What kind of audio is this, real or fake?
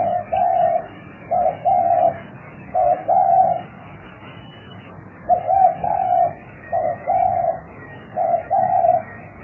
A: fake